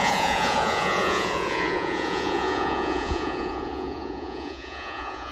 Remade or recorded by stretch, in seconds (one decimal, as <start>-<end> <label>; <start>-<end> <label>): 0.0-5.3 remade